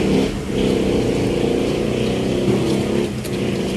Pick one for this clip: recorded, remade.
recorded